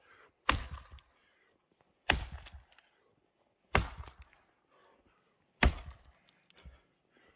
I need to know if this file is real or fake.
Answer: real